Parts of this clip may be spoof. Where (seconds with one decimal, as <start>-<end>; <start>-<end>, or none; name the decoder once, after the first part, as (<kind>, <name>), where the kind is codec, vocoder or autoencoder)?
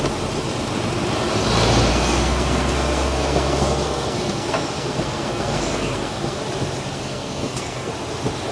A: 1.9-6.4 (codec, SNAC); 6.9-7.9